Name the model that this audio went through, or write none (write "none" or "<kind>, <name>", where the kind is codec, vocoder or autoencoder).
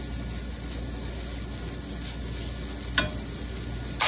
none